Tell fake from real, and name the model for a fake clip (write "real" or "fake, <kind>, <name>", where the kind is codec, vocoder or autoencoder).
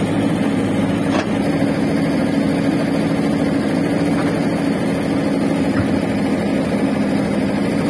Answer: real